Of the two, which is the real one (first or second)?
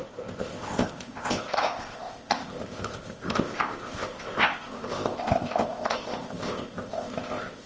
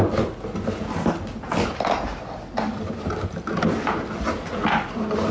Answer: second